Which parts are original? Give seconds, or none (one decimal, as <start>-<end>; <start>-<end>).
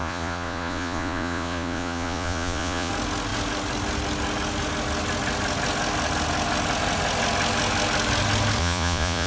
2.9-8.6